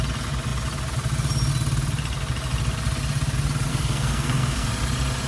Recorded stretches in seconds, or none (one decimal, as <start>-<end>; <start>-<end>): 0.0-3.7; 4.7-5.3